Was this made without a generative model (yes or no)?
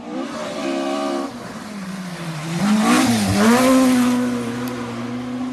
yes